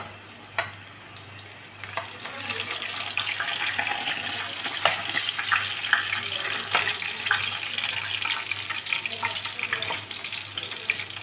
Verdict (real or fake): real